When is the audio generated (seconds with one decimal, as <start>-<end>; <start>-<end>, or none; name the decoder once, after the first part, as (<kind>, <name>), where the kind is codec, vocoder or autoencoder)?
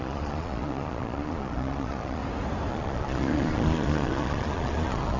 0.0-2.2 (vocoder, Vocos); 2.7-5.2